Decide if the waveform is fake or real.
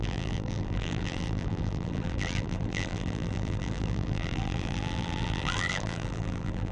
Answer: fake